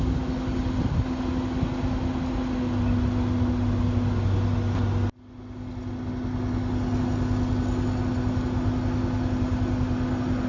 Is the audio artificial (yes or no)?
no